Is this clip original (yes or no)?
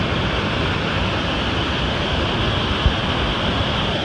yes